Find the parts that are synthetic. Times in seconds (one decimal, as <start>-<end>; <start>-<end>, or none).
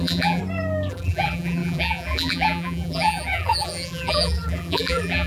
0.0-0.4; 0.9-5.3